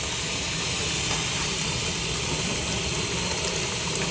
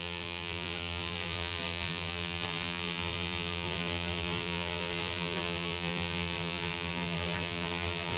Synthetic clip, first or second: second